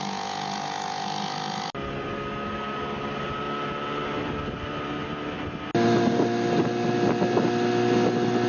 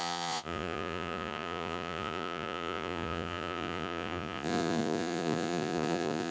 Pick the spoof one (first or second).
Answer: second